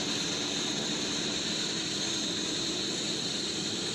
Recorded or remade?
recorded